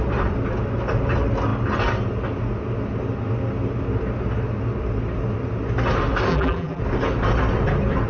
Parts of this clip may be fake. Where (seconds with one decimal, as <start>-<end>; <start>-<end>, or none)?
6.3-6.8